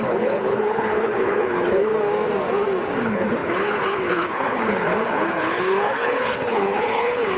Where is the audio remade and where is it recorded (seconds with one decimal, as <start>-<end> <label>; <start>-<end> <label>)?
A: 0.0-1.9 remade; 1.9-3.0 recorded; 3.0-7.4 remade